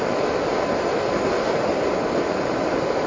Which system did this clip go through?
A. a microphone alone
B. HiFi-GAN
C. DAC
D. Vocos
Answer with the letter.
A